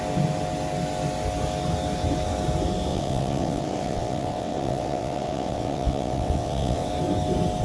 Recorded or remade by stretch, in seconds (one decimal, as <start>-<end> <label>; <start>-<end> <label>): 0.0-2.9 recorded; 2.9-6.9 remade; 6.9-7.6 recorded